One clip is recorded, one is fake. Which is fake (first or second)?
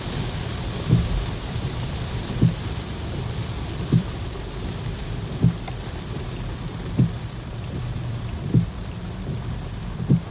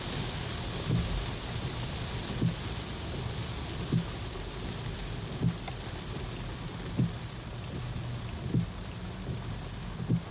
first